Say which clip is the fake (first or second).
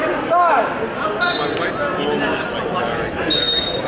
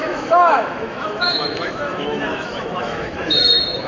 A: second